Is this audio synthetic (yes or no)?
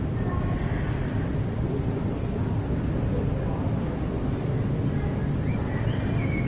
no